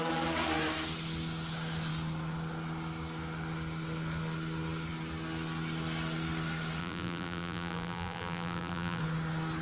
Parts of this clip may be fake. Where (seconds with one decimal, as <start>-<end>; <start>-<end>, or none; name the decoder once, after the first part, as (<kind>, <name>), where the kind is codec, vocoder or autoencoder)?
6.8-9.0 (vocoder, BigVGAN v2)